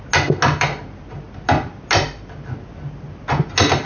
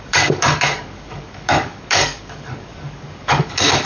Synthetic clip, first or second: second